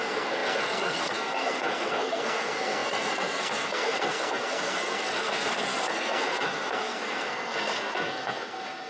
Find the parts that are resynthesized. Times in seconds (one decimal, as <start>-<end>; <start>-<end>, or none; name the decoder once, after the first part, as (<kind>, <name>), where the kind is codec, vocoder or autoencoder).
0.0-8.9 (codec, SNAC)